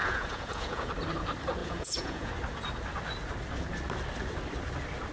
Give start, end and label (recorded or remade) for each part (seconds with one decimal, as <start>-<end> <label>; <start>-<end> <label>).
0.0-0.9 remade; 0.9-1.6 recorded; 1.6-2.3 remade; 2.3-5.1 recorded